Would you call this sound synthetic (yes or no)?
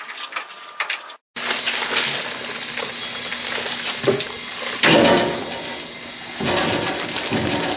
no